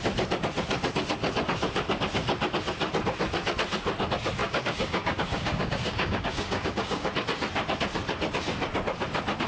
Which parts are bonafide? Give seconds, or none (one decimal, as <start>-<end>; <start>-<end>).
0.0-4.4; 7.1-9.5